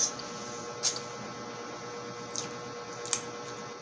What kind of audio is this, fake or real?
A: real